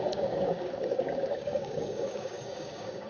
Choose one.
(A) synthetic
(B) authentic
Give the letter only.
A